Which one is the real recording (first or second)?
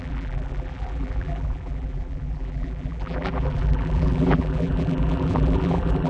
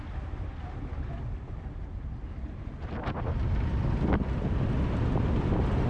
second